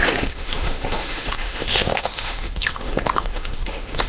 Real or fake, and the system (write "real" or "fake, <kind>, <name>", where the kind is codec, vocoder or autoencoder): fake, autoencoder, DAC-VAE